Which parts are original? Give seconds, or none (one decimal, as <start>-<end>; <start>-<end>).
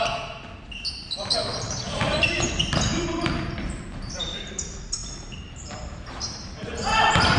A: 0.0-1.5; 4.4-5.0